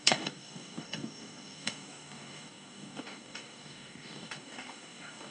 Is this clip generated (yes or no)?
yes